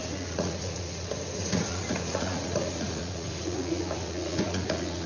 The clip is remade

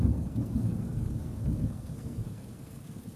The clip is remade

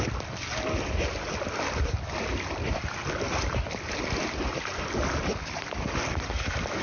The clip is recorded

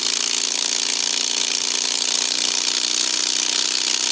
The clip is recorded